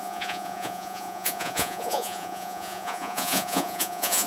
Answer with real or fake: fake